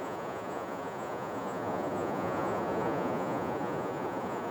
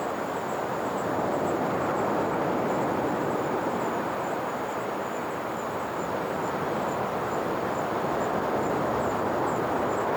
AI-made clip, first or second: first